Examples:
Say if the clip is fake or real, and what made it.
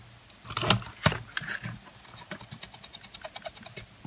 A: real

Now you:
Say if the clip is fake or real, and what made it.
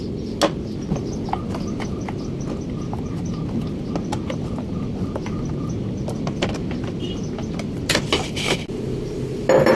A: real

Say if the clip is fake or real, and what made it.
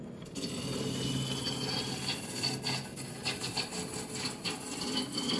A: real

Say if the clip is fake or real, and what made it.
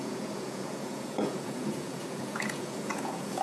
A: fake, vocoder, Vocos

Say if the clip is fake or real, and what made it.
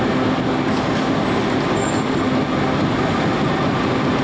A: real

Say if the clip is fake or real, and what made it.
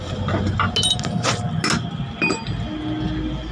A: real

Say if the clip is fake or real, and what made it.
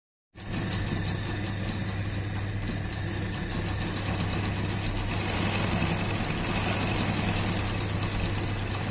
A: real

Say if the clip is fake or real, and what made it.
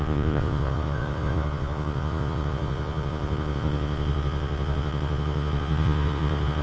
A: fake, vocoder, Vocos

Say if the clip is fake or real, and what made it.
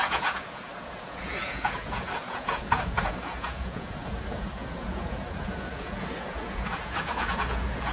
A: fake, vocoder, Vocos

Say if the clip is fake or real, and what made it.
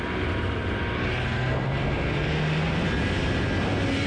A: real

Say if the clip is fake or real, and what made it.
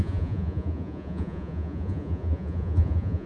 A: fake, vocoder, Vocos